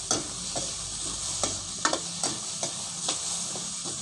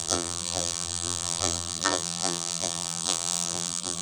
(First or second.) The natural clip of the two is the first